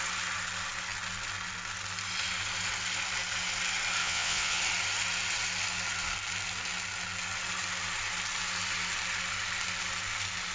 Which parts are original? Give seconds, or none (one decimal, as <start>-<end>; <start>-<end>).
0.0-4.0; 4.6-10.5